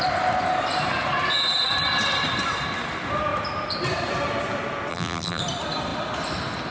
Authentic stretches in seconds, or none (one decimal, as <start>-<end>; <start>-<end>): 0.0-4.9; 5.4-6.7